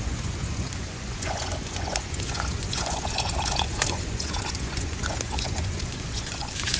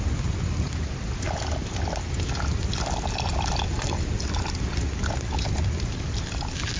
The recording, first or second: second